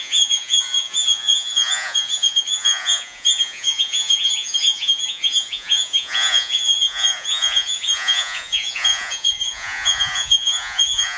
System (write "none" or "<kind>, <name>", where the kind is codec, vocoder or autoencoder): vocoder, Vocos